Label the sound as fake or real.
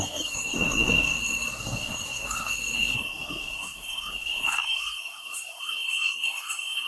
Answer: fake